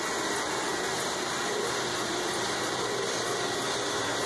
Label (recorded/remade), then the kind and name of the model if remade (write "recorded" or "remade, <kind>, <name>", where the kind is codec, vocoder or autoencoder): recorded